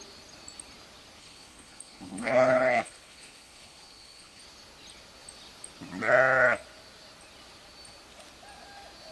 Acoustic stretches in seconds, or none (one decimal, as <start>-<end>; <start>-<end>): 0.0-1.2; 4.4-9.1